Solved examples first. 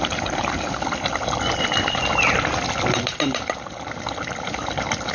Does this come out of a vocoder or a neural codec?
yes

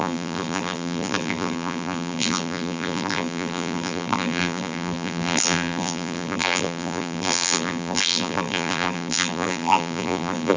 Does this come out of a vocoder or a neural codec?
yes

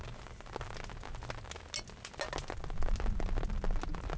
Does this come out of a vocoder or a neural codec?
no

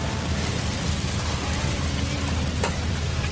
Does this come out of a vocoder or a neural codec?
yes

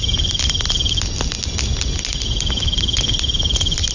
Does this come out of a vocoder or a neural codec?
no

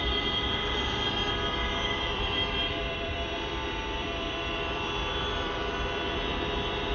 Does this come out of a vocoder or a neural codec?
yes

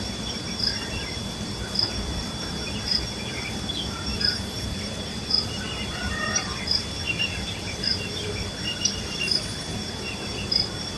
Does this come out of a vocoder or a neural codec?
yes